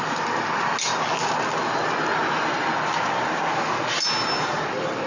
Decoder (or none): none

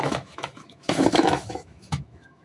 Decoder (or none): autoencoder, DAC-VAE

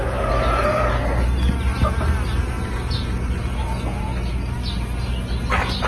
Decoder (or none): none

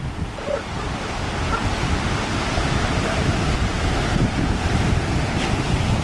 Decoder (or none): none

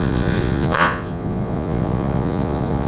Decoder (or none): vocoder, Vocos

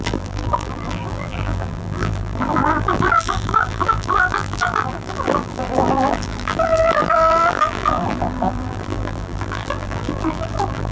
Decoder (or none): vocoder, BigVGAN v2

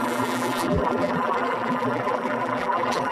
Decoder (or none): vocoder, BigVGAN v2